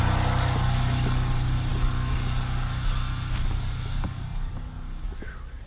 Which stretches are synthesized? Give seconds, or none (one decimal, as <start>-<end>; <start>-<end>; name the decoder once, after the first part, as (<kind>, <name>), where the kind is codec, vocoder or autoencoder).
none